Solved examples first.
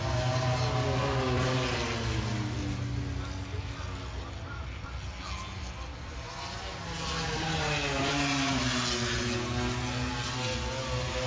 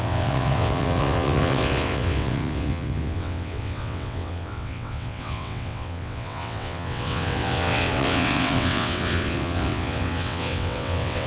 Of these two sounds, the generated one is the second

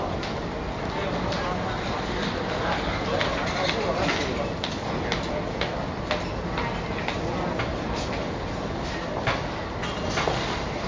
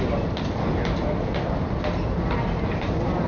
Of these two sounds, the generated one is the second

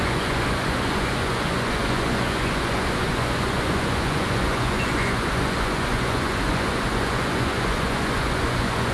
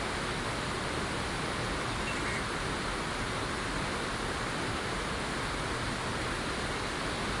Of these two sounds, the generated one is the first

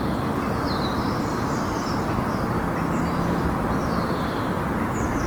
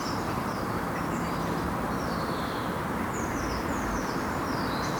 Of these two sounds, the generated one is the second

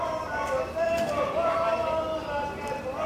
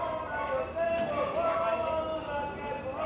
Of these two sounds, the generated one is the first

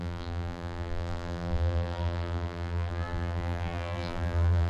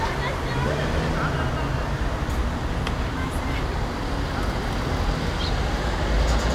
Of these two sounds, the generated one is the first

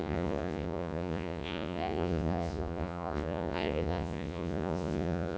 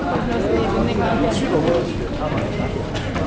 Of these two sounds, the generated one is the first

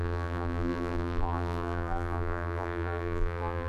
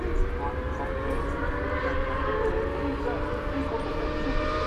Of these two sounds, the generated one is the first